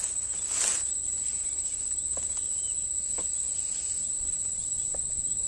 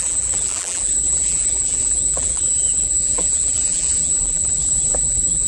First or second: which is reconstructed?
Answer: second